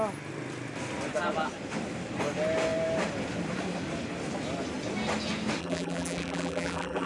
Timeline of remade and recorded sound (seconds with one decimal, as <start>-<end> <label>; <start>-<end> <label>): 0.0-5.6 recorded; 5.6-7.1 remade

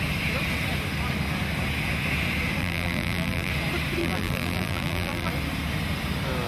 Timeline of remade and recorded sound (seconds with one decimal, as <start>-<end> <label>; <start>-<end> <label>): 0.0-2.6 recorded; 2.6-3.5 remade; 3.5-4.0 recorded; 4.0-5.3 remade; 5.3-6.5 recorded